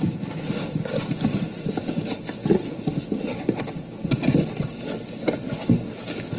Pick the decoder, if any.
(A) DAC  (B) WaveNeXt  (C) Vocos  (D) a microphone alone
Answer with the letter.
D